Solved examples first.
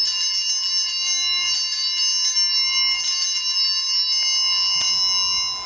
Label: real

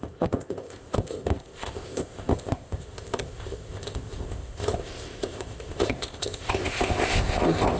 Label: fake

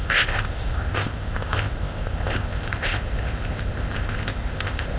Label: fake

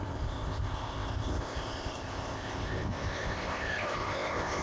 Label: fake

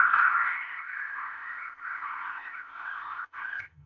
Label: fake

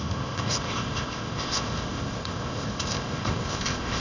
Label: fake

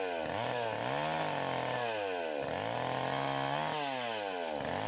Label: real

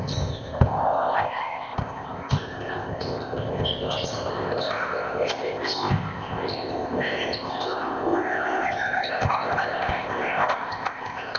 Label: fake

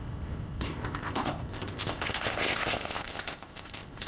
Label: fake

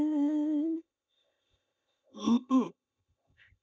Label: fake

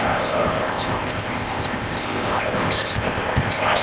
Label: fake